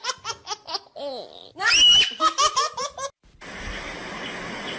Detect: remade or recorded recorded